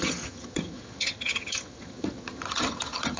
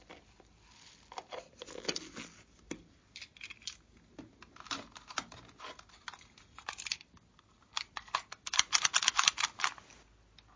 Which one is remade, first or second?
first